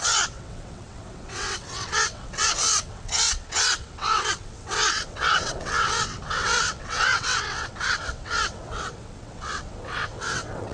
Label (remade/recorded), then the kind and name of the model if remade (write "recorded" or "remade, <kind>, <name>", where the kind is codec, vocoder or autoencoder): remade, vocoder, WaveNeXt